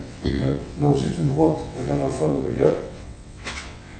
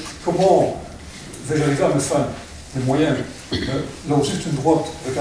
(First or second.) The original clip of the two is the second